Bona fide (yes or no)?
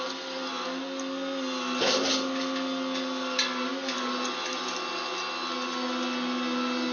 yes